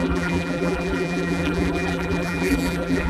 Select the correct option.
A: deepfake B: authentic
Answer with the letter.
A